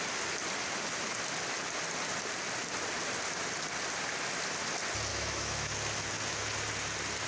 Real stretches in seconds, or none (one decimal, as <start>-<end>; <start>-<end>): 0.0-5.1; 5.7-7.3